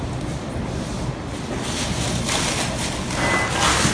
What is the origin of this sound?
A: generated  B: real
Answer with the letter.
B